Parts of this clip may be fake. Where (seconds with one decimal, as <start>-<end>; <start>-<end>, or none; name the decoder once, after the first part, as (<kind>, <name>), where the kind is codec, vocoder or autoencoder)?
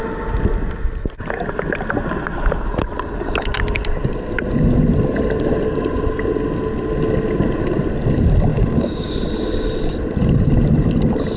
8.5-9.1 (codec, DAC)